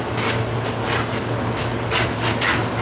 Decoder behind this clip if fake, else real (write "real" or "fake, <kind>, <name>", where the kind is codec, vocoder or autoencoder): real